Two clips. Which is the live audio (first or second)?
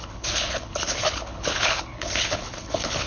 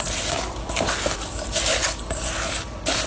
second